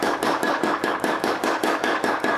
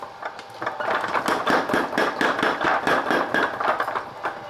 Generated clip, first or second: first